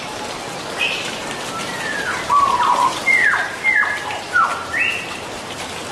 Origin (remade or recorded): recorded